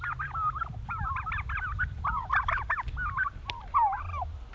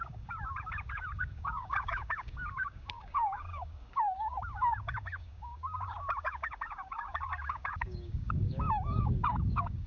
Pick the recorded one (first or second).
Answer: first